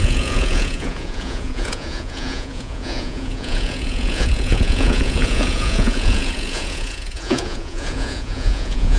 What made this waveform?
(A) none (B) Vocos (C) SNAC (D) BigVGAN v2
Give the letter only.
B